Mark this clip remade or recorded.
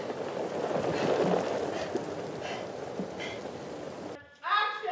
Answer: recorded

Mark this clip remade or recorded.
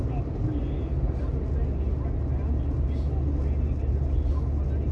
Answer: recorded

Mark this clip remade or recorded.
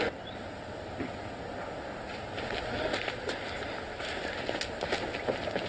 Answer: recorded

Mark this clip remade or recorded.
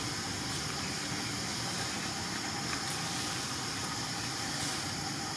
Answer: recorded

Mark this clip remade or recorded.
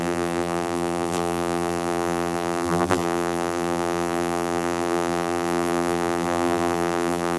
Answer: remade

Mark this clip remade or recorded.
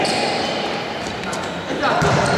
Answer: remade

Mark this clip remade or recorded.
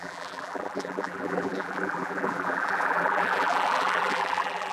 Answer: remade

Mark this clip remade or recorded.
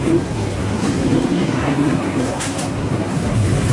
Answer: remade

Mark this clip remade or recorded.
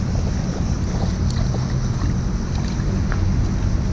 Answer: recorded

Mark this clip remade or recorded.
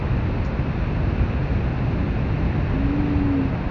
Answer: recorded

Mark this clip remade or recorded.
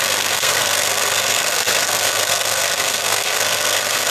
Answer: remade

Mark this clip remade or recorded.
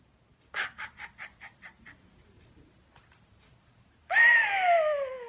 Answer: recorded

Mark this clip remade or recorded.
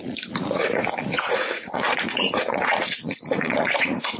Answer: remade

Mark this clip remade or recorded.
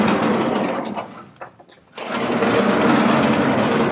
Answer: recorded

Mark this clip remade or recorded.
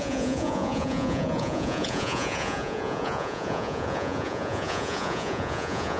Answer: remade